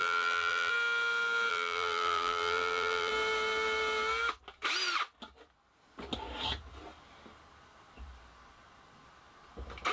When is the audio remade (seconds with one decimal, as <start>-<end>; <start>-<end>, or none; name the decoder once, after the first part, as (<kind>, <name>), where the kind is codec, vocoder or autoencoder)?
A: 0.0-0.7 (vocoder, BigVGAN v2); 1.5-3.1